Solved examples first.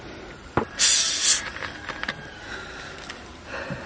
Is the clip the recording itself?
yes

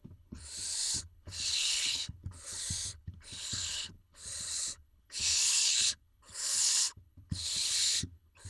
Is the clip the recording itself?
no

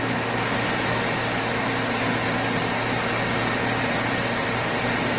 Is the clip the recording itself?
yes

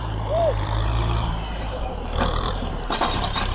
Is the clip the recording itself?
no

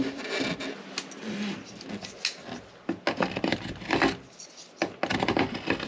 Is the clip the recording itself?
yes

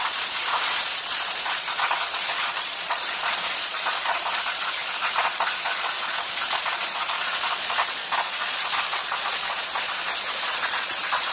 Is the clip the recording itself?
no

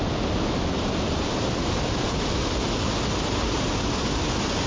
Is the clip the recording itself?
yes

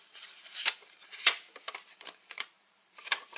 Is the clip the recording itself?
no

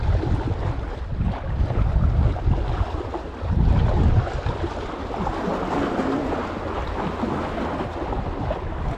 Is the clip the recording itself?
yes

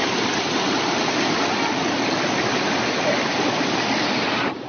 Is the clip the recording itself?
yes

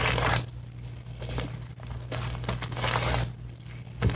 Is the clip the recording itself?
no